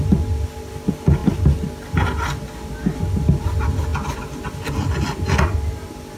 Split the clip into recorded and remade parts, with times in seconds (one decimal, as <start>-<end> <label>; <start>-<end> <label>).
0.0-6.2 recorded